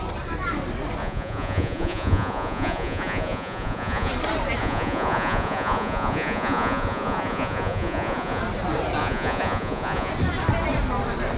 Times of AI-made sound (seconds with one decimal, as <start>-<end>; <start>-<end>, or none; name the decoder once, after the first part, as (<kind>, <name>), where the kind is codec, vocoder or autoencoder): 1.0-4.1 (vocoder, Vocos); 4.6-8.4; 9.0-10.1